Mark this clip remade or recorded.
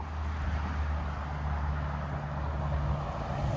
recorded